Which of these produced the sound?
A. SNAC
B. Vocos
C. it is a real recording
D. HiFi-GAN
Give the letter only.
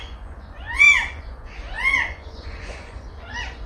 B